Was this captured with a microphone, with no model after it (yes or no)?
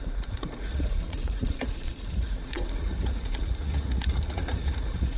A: no